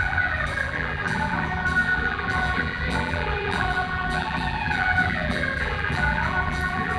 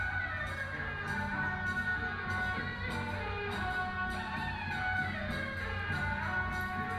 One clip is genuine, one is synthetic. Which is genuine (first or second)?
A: second